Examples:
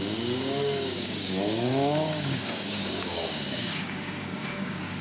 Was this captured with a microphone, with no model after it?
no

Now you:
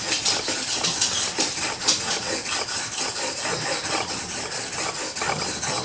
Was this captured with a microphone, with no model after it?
yes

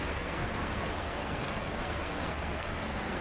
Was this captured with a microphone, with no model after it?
no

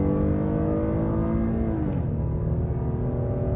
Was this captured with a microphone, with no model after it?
yes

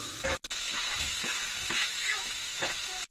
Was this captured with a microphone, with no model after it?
no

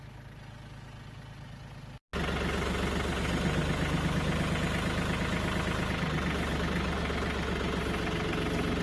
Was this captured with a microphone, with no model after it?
yes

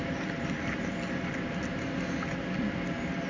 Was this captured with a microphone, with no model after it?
yes